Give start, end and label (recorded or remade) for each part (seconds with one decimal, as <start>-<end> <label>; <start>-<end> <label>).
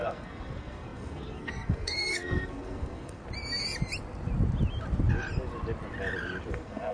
0.0-3.2 remade; 3.2-6.5 recorded; 6.5-6.9 remade